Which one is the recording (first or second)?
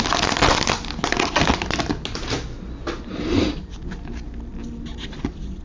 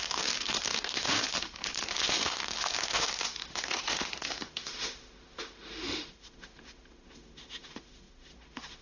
first